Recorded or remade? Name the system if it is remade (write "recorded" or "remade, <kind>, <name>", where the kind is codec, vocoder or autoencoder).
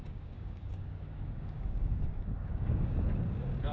remade, codec, DAC